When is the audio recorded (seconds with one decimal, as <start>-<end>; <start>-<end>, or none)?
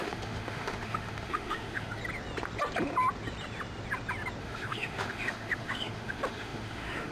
2.0-4.4